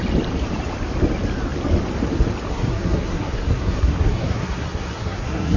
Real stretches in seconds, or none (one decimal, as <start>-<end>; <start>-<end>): 0.0-2.5